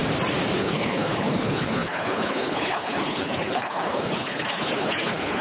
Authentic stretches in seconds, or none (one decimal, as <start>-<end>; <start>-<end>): 0.0-0.6